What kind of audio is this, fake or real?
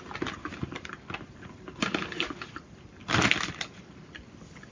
real